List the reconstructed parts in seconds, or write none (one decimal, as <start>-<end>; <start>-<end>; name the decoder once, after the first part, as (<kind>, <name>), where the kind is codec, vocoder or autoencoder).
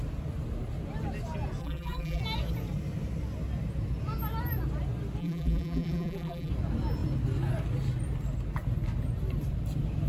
1.6-2.2 (vocoder, BigVGAN v2); 5.2-6.5